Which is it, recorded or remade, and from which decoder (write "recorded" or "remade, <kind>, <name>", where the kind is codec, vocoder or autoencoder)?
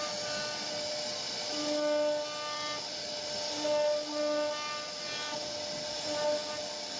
recorded